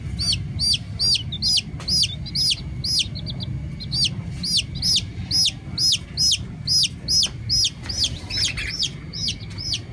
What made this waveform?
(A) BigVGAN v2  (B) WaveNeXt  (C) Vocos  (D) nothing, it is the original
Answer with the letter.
D